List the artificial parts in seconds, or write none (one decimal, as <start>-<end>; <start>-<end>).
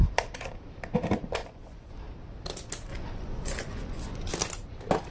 1.4-1.9; 2.9-4.3